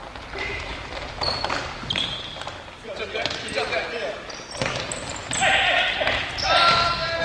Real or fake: real